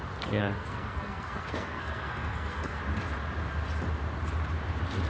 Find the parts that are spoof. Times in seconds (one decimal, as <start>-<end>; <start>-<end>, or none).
0.4-2.8